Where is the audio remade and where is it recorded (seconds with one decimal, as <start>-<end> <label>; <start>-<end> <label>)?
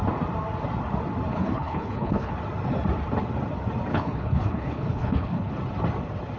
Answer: 0.0-1.3 recorded; 1.3-2.3 remade; 2.3-3.9 recorded; 3.9-5.5 remade; 5.5-6.4 recorded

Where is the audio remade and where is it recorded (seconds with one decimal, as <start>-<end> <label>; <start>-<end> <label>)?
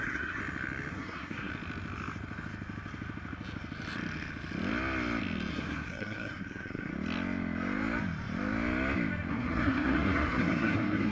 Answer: 0.0-0.4 remade; 0.4-0.9 recorded; 0.9-1.5 remade; 1.5-5.5 recorded; 5.5-6.9 remade; 6.9-9.3 recorded; 9.3-11.1 remade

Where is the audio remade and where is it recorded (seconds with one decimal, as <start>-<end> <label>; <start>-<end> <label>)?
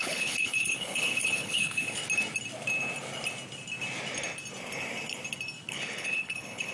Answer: 0.0-2.0 remade; 2.0-5.7 recorded; 5.7-6.7 remade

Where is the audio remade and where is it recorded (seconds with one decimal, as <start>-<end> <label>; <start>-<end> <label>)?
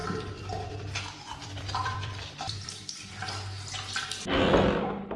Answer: 0.0-3.1 remade; 3.1-5.2 recorded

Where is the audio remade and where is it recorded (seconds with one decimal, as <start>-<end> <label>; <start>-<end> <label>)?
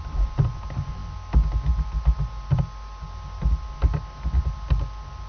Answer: 0.0-5.3 recorded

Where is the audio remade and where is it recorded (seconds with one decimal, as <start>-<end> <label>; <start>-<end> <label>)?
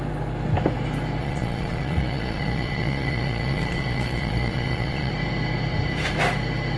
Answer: 0.0-1.2 recorded; 1.2-5.1 remade; 5.1-6.8 recorded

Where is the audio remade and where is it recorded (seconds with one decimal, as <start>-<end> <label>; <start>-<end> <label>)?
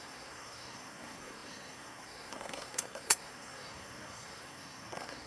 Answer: 0.0-5.3 remade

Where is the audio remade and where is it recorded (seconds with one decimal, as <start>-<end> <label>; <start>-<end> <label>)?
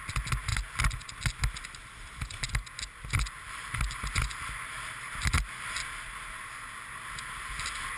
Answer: 0.0-8.0 recorded